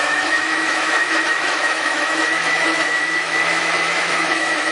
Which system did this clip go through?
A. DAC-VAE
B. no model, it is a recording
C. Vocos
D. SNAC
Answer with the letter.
A